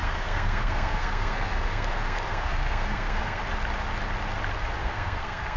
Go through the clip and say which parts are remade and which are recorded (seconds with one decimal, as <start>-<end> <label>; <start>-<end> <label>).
0.0-3.4 remade; 3.4-4.8 recorded; 4.8-5.6 remade